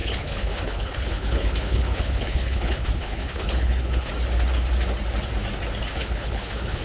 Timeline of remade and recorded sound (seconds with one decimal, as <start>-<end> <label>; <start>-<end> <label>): 0.0-4.1 remade; 4.1-5.9 recorded; 5.9-6.8 remade